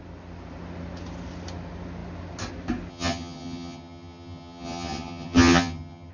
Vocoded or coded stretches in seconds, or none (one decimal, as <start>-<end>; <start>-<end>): 2.9-6.1